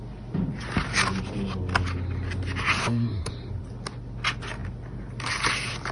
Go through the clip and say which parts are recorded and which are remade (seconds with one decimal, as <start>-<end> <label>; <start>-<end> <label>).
0.0-2.8 recorded; 2.8-3.3 remade; 3.3-5.9 recorded